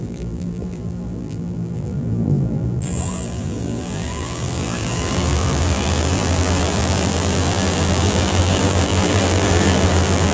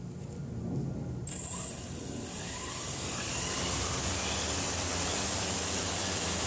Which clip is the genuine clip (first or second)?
second